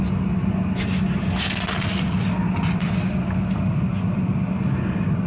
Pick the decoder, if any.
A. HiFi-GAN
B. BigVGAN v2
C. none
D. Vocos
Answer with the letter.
C